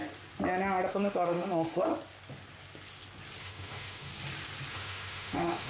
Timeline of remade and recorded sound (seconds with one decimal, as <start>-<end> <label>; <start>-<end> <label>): 0.0-0.9 recorded; 0.9-1.9 remade; 1.9-3.4 recorded; 3.4-4.1 remade; 4.1-4.7 recorded; 4.7-5.7 remade